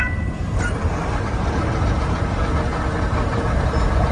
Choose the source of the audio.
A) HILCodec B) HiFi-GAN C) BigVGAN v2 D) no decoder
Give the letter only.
D